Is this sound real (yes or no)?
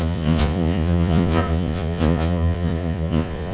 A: no